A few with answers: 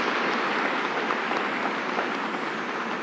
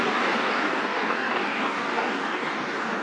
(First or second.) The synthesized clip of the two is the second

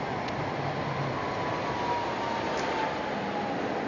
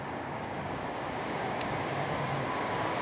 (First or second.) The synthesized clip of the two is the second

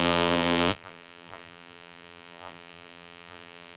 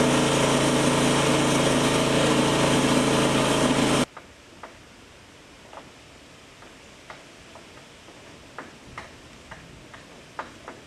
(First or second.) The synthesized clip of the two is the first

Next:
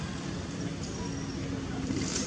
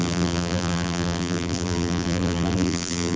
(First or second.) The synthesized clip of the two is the second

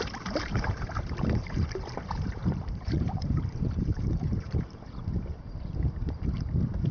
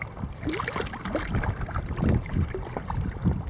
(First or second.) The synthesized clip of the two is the first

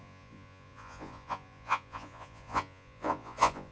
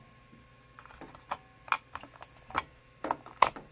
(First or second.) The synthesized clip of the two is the first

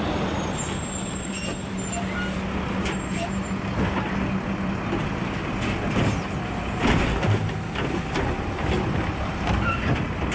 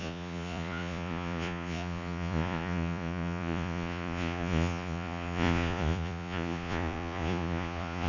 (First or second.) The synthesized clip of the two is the second